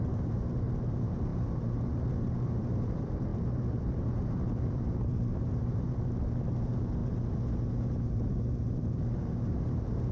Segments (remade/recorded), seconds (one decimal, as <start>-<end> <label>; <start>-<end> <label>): 0.0-7.0 remade; 7.0-7.7 recorded; 7.7-10.1 remade